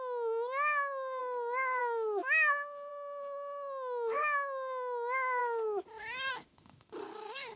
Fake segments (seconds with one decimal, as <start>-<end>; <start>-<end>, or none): 0.0-1.2; 1.8-5.4; 6.3-7.6